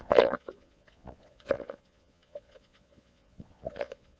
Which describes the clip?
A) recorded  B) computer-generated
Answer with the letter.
B